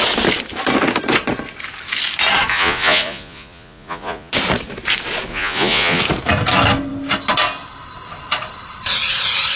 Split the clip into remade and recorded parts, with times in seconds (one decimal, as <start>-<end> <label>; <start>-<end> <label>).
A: 0.0-2.5 recorded; 2.5-4.3 remade; 4.3-5.3 recorded; 5.3-6.0 remade; 6.0-9.6 recorded